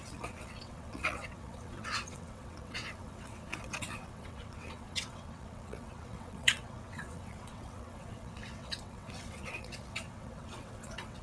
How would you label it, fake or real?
fake